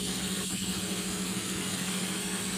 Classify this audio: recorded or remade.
remade